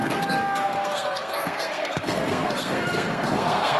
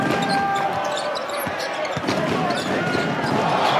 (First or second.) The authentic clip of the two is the second